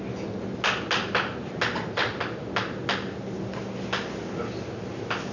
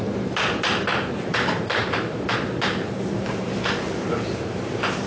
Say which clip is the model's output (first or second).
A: second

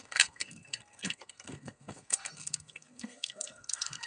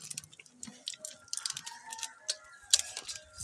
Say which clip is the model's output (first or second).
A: first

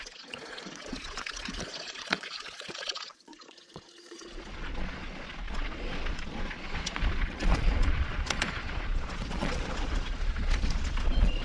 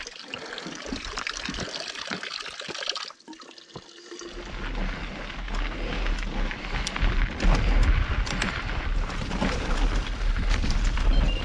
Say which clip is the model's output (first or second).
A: first